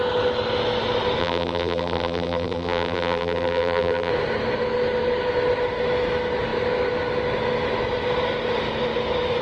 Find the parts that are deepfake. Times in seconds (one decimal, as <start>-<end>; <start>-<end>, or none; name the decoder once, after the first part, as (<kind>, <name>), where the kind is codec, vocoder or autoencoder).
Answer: 1.2-4.1 (vocoder, BigVGAN v2)